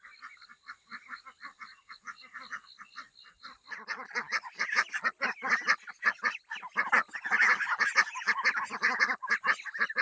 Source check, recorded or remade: recorded